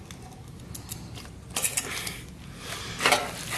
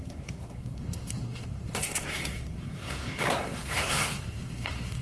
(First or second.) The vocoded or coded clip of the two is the second